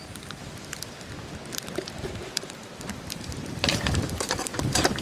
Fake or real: fake